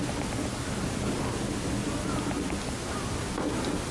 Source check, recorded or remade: recorded